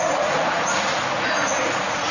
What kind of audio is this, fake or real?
fake